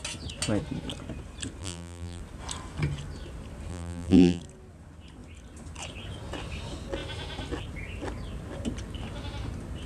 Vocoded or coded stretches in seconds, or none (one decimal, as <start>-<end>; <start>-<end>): 1.6-2.2; 3.7-4.4